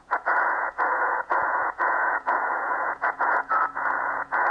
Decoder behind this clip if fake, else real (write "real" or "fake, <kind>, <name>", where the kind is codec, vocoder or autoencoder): fake, vocoder, Vocos